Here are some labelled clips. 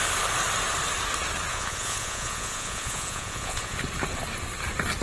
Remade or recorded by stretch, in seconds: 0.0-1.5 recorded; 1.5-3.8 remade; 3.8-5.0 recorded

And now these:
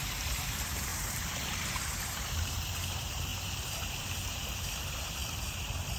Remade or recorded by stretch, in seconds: 0.0-5.2 remade; 5.2-6.0 recorded

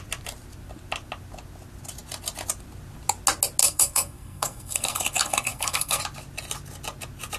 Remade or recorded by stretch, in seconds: 0.0-3.6 recorded; 3.6-6.0 remade; 6.0-7.4 recorded

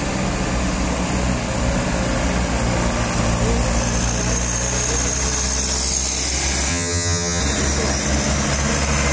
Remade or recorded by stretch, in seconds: 0.0-6.7 recorded; 6.7-7.4 remade; 7.4-9.1 recorded

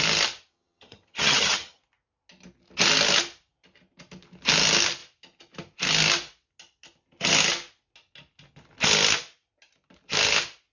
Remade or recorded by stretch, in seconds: 0.0-0.5 recorded; 0.5-1.8 remade; 1.8-10.7 recorded